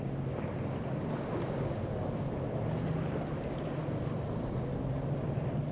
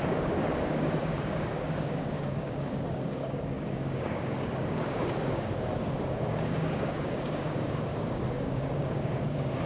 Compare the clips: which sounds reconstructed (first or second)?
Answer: second